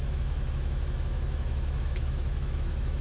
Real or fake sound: fake